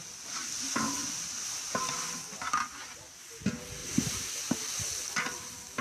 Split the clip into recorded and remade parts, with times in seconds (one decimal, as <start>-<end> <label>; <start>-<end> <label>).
0.0-3.8 recorded; 3.8-4.3 remade; 4.3-5.8 recorded